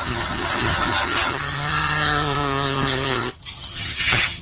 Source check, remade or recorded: remade